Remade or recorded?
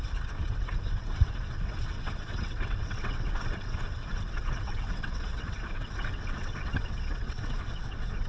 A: remade